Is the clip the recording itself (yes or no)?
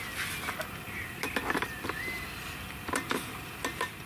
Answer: yes